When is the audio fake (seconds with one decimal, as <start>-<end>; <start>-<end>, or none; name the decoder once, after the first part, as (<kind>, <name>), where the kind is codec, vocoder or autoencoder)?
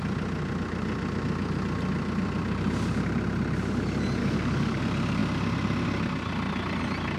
4.2-4.8 (codec, DAC)